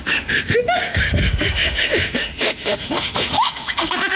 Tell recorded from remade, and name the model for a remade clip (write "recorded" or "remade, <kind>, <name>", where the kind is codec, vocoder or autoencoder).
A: remade, autoencoder, DAC-VAE